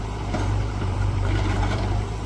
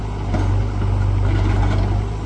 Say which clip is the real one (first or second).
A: second